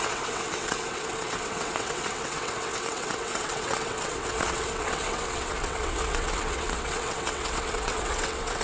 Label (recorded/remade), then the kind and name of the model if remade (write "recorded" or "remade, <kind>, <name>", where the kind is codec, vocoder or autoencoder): remade, vocoder, WaveNeXt